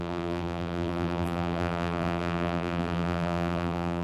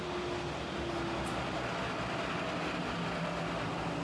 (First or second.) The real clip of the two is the second